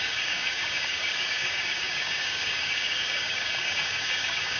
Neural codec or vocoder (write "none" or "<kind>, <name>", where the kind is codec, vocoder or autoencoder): codec, DAC